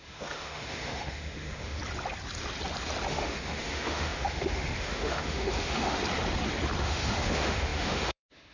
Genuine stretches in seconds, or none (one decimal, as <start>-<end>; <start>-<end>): 1.8-3.1; 6.0-6.8